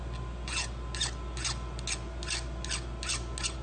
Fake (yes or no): no